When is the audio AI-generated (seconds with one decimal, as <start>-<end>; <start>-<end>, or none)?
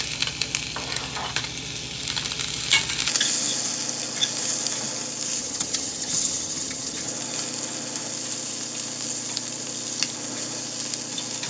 5.4-7.1